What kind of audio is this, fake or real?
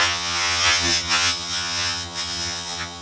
fake